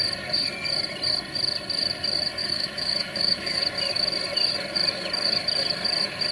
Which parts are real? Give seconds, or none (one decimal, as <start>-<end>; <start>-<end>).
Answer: 0.0-2.4; 3.6-6.3